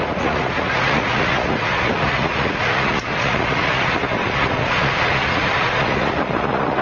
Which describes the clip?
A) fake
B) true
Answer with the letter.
A